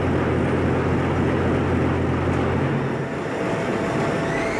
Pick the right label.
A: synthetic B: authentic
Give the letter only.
B